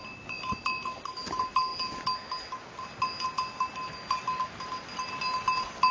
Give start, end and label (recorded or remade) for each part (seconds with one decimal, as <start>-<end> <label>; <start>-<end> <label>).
0.0-5.9 recorded